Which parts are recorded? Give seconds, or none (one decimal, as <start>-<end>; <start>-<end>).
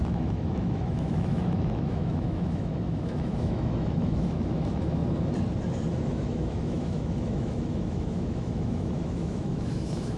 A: 5.0-5.9